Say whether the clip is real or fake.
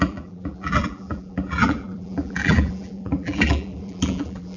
fake